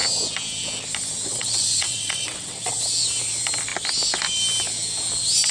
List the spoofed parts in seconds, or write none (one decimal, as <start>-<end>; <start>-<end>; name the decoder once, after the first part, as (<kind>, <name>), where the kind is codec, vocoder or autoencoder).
1.3-2.8 (vocoder, WaveNeXt)